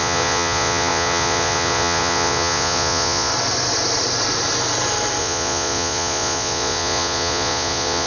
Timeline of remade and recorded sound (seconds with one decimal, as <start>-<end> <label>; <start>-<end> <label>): 0.0-3.3 remade; 3.3-5.2 recorded; 5.2-8.1 remade